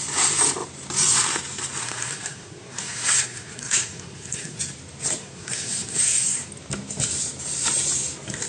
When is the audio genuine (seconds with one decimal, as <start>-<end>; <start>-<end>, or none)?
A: 0.0-1.8; 4.6-5.2; 6.5-8.5